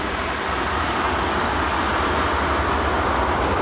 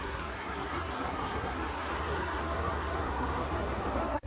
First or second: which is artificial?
second